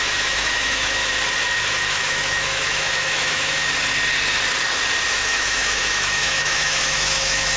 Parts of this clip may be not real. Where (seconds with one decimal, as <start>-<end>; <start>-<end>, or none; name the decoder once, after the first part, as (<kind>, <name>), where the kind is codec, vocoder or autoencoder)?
0.0-1.0 (autoencoder, DAC-VAE); 1.8-3.6; 5.1-7.6